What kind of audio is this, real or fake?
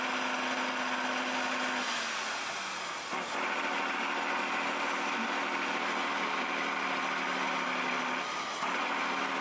real